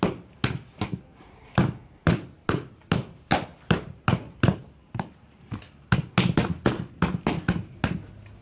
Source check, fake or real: real